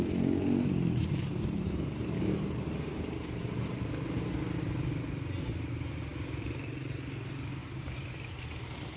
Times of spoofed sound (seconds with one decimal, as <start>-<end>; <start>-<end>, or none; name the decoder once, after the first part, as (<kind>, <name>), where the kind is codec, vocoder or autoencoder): 1.0-3.7 (vocoder, BigVGAN v2); 7.6-8.4